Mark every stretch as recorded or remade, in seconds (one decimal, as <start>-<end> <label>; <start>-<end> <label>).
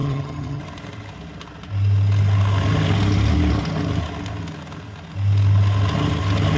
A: 0.0-0.6 remade; 0.6-6.6 recorded